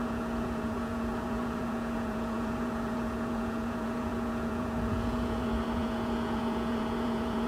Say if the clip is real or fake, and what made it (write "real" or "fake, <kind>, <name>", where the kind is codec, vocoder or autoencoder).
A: fake, vocoder, Vocos